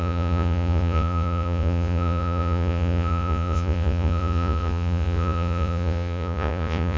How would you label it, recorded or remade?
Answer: remade